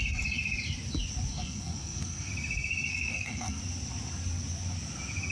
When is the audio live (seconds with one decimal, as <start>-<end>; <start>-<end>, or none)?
0.0-1.3; 2.3-2.9; 3.6-5.3